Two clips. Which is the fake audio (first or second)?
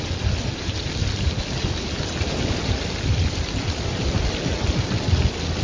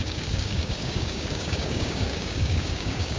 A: second